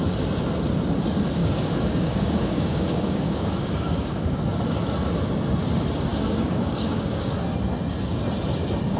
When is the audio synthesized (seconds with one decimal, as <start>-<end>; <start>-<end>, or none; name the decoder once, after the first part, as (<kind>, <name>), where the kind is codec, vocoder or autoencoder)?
1.4-4.4 (codec, DAC); 6.1-7.3